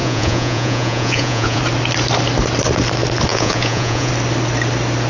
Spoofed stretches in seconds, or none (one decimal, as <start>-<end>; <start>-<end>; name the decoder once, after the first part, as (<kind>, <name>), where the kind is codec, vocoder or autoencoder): 0.0-1.6 (vocoder, Vocos); 3.3-4.1